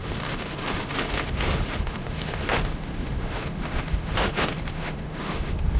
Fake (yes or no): yes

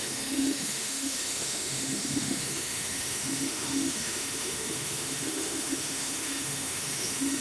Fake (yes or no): yes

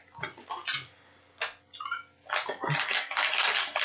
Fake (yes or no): no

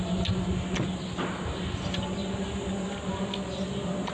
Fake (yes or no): no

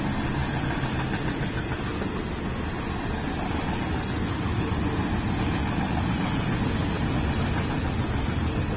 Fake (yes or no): no